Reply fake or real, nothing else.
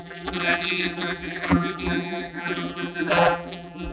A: fake